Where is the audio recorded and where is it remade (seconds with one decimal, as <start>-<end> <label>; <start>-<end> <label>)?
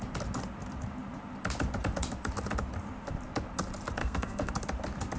0.0-4.0 recorded; 4.0-4.5 remade; 4.5-5.2 recorded